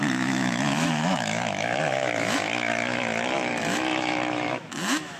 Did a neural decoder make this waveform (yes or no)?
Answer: yes